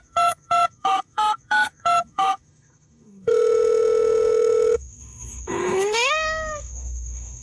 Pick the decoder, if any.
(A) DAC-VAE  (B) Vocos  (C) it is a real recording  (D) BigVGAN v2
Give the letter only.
A